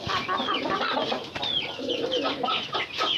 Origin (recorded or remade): recorded